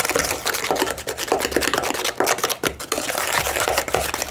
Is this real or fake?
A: real